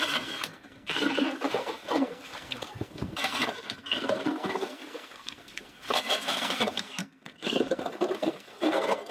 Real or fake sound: fake